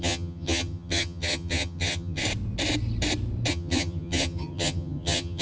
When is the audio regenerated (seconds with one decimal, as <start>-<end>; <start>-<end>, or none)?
0.0-2.2; 3.5-5.4